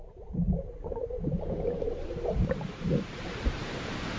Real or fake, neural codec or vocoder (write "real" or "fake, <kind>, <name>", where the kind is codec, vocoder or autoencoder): fake, vocoder, BigVGAN v2